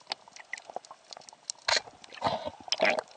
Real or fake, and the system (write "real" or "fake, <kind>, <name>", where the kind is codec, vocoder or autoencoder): real